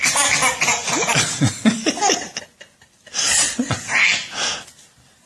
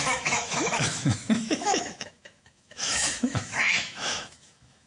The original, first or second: first